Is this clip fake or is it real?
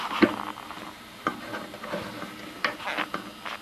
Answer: real